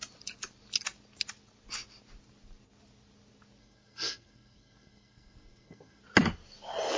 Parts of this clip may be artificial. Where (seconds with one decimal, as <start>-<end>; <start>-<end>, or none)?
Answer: 3.6-6.0